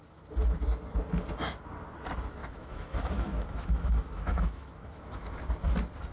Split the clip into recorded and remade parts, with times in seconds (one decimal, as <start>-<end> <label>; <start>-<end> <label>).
0.0-2.4 recorded; 2.4-5.4 remade; 5.4-6.1 recorded